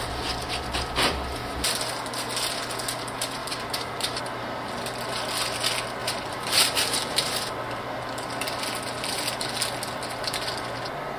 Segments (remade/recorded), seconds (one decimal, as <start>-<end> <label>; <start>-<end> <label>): 0.0-3.4 recorded; 3.4-4.7 remade; 4.7-6.0 recorded; 6.0-7.8 remade; 7.8-11.2 recorded